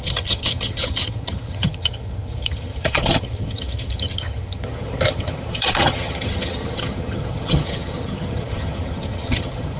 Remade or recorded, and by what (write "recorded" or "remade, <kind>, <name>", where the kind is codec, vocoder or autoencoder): remade, vocoder, HiFi-GAN